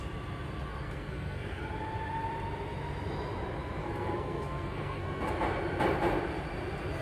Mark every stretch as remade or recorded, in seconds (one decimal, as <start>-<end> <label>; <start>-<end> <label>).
0.0-0.7 recorded; 0.7-1.6 remade; 1.6-3.8 recorded; 3.8-5.3 remade; 5.3-7.0 recorded